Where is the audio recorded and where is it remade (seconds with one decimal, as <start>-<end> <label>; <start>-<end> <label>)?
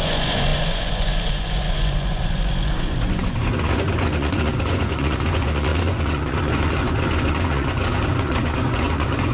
0.0-9.3 remade